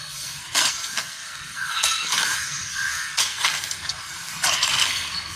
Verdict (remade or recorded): remade